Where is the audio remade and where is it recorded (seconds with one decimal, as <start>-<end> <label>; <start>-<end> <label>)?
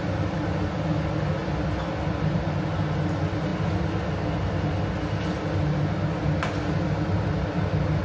0.0-8.0 recorded